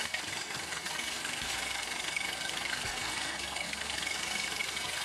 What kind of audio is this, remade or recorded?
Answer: remade